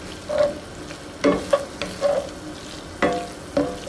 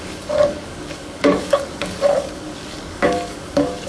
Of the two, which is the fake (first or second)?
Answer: second